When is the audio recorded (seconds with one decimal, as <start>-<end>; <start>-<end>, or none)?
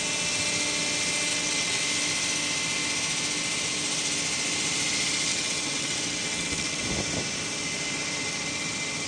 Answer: 0.0-1.3; 1.8-5.3; 6.8-9.1